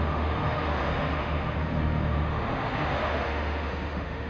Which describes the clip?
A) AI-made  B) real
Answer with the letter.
A